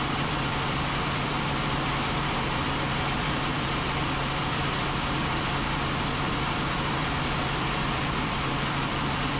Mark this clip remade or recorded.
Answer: remade